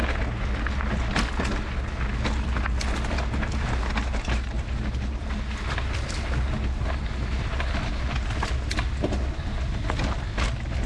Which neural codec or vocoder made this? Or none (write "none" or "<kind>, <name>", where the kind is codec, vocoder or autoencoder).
none